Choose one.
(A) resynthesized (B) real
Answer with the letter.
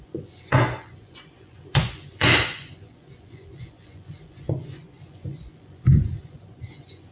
A